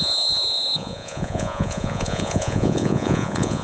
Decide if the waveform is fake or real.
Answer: fake